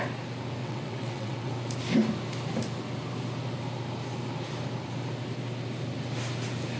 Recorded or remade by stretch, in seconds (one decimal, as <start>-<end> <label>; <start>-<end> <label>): 0.0-0.6 recorded; 0.6-1.5 remade; 1.5-6.8 recorded